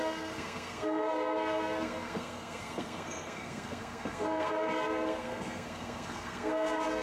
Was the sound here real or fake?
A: fake